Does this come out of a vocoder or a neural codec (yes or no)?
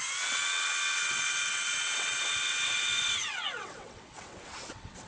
yes